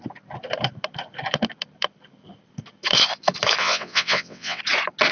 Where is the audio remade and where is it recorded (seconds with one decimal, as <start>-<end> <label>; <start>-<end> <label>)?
0.0-3.6 recorded; 3.6-4.6 remade; 4.6-5.1 recorded